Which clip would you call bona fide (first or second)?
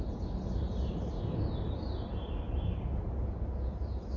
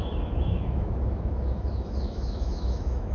first